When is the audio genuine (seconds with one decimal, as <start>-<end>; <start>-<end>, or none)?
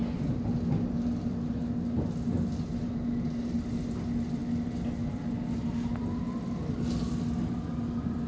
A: 0.0-8.3